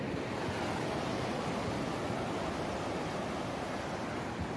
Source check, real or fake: real